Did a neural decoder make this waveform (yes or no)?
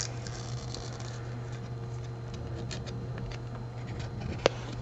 no